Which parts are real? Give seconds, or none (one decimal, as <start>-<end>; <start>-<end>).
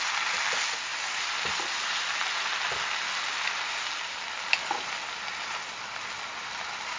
0.0-7.0